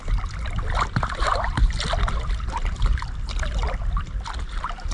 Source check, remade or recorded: recorded